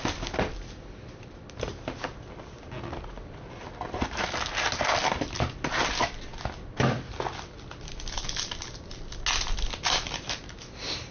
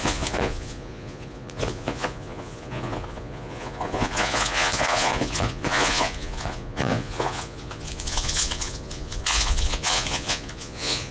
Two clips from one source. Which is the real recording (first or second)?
first